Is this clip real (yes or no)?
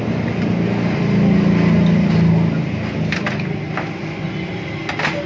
yes